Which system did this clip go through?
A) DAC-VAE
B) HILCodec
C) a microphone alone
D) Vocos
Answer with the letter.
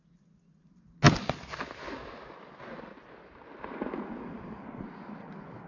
C